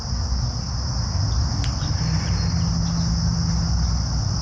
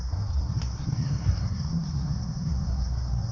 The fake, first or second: second